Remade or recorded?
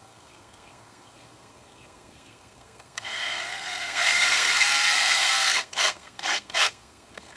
remade